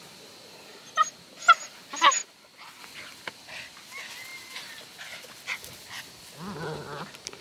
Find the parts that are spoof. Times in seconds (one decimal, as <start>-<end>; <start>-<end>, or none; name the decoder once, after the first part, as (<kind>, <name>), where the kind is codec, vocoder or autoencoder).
none